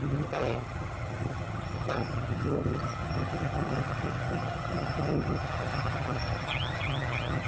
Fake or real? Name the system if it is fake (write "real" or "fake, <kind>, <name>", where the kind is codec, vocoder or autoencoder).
fake, vocoder, HiFi-GAN